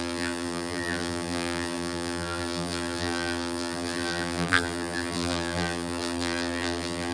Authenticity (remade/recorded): remade